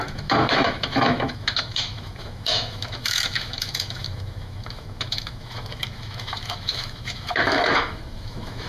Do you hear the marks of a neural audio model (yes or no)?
yes